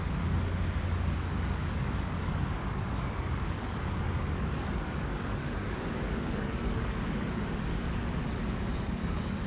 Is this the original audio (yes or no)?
no